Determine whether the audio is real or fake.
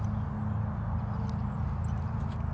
real